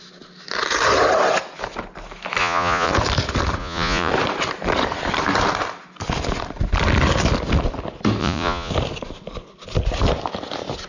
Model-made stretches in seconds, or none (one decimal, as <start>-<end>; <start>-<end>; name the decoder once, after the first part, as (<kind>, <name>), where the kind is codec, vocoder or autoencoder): 2.4-2.9 (vocoder, Vocos); 3.6-4.1; 8.2-8.7